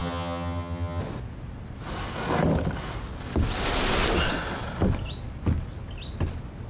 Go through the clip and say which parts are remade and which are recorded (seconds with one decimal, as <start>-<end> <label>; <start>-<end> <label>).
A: 0.0-1.0 remade; 1.0-6.7 recorded